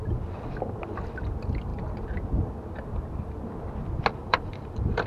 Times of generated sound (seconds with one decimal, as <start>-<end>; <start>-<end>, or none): 4.2-5.1